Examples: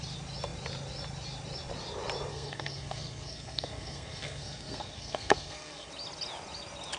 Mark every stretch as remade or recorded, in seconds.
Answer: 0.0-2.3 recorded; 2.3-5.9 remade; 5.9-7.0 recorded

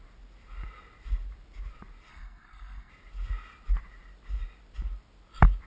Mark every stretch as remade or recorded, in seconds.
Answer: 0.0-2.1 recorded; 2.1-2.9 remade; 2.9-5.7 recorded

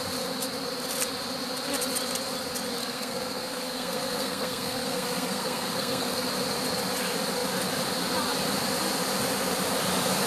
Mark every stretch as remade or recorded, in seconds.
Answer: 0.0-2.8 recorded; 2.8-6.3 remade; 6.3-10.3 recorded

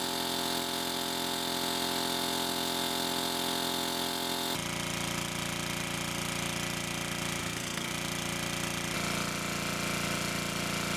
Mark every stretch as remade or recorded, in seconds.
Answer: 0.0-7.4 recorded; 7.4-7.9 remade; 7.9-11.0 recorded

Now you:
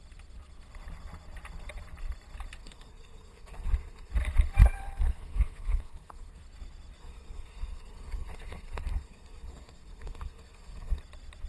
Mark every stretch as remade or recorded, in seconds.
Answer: 0.0-2.6 recorded; 2.6-4.1 remade; 4.1-4.6 recorded; 4.6-6.4 remade; 6.4-7.0 recorded; 7.0-11.0 remade; 11.0-11.5 recorded